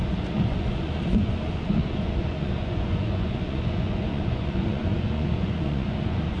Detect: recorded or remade remade